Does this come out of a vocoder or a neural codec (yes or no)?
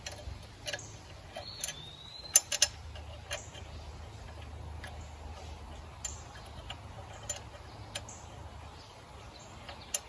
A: no